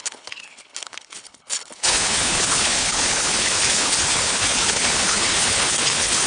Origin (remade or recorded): remade